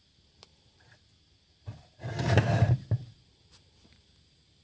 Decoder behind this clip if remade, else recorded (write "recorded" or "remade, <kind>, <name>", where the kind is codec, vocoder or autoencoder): recorded